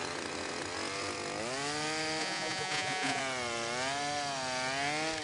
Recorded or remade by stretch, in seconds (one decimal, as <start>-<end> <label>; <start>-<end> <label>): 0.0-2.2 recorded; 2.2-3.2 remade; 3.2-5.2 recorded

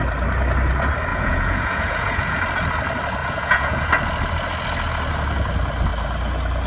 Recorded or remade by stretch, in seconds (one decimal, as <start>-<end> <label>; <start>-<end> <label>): 0.0-1.1 recorded; 1.1-2.4 remade; 2.4-3.2 recorded; 3.2-3.9 remade; 3.9-6.7 recorded

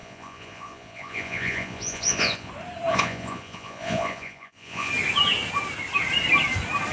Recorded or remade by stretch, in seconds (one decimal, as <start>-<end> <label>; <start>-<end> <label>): 0.0-2.5 remade; 2.5-2.9 recorded; 2.9-4.9 remade; 4.9-6.9 recorded